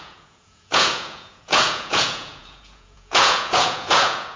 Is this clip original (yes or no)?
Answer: no